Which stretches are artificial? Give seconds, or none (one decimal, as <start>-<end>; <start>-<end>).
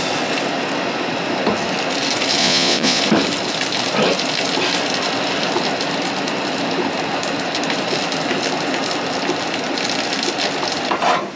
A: 2.4-3.0